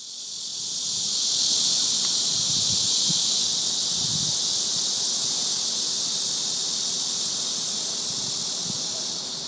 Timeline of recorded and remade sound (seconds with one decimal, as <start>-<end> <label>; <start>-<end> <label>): 0.0-9.5 recorded